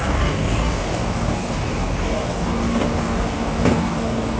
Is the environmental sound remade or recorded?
remade